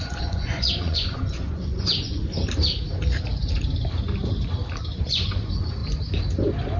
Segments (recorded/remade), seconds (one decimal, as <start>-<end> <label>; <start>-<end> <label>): 0.0-2.2 remade; 2.2-5.0 recorded; 5.0-5.8 remade; 5.8-6.8 recorded